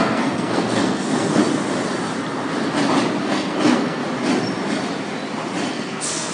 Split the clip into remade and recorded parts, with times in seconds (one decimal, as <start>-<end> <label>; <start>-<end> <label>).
0.0-1.4 remade; 1.4-3.2 recorded; 3.2-4.0 remade; 4.0-5.7 recorded; 5.7-6.3 remade